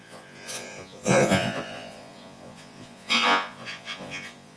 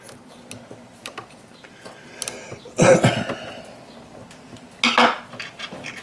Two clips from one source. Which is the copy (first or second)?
first